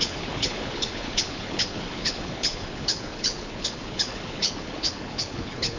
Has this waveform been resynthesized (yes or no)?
yes